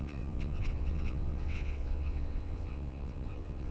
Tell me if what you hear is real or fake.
fake